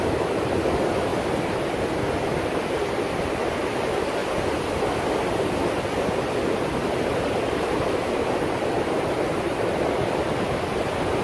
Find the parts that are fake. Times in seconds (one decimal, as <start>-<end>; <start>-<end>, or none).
none